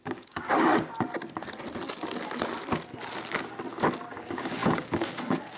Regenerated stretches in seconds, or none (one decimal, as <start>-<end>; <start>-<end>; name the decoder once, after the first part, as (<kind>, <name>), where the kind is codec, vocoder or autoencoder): 0.0-0.7 (codec, DAC); 4.1-5.6